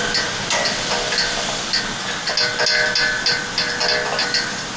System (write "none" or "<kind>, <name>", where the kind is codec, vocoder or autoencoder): none